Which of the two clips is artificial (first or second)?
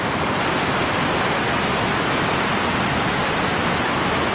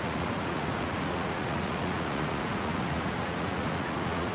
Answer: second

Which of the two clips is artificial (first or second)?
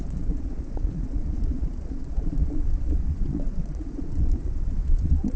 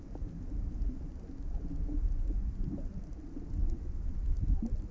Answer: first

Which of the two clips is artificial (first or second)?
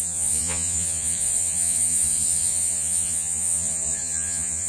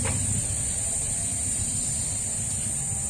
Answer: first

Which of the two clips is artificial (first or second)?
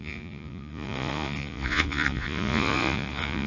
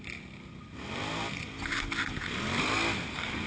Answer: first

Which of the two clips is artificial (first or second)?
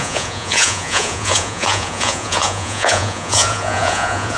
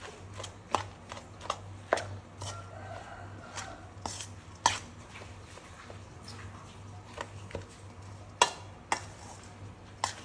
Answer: first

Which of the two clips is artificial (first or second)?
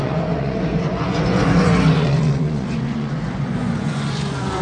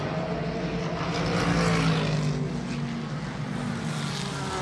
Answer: first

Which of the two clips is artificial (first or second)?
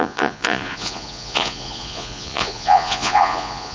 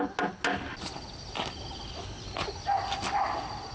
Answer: first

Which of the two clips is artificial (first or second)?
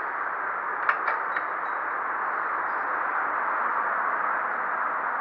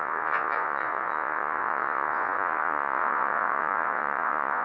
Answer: second